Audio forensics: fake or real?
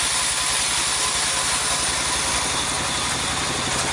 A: real